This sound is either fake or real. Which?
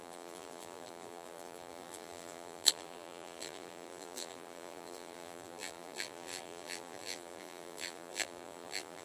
fake